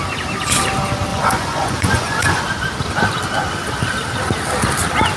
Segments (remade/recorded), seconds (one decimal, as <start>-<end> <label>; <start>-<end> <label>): 0.0-1.1 recorded; 1.1-2.4 remade; 2.4-5.2 recorded